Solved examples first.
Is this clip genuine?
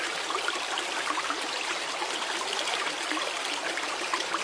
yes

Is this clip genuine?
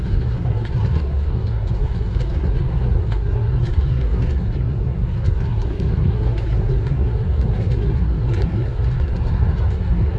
no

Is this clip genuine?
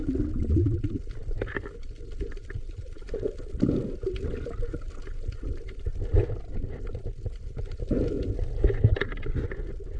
yes